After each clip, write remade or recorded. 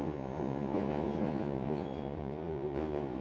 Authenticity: remade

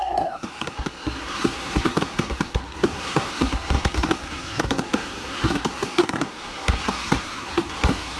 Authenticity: remade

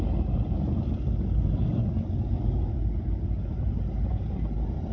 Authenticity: remade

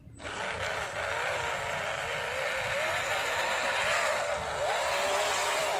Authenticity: recorded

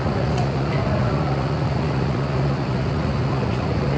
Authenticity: remade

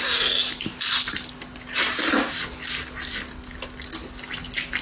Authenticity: recorded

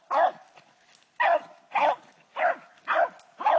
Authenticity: recorded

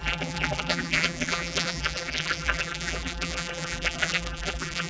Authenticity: remade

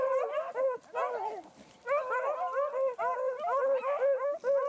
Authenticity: recorded